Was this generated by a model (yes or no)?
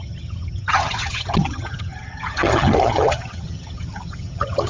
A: yes